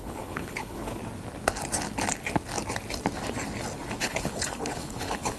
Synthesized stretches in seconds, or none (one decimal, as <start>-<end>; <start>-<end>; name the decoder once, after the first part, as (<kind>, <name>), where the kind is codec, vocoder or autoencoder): 0.0-1.0 (codec, HILCodec); 4.0-5.4

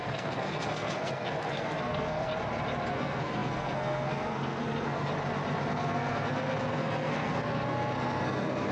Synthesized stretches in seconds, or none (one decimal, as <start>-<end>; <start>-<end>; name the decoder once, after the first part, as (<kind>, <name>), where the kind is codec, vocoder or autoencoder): 0.0-2.3 (codec, SNAC); 2.9-5.1; 5.7-8.7

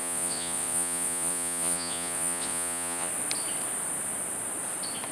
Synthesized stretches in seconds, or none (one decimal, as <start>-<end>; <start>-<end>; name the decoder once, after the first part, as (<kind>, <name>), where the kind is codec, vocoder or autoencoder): 0.0-3.1 (vocoder, Vocos)

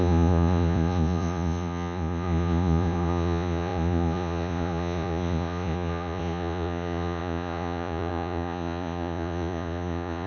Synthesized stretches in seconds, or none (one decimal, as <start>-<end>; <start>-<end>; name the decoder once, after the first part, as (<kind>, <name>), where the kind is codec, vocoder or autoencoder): 0.0-10.3 (vocoder, Vocos)